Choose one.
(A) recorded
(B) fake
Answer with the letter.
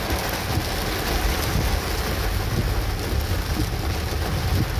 A